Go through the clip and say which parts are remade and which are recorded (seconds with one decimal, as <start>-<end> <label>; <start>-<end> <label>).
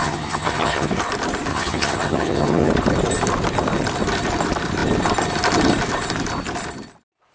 0.0-0.9 remade; 0.9-1.5 recorded; 1.5-2.7 remade; 2.7-7.3 recorded